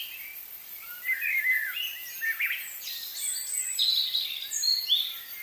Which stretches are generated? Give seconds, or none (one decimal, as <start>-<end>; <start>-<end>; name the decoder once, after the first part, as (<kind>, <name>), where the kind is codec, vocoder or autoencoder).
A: 0.6-2.4 (vocoder, BigVGAN v2)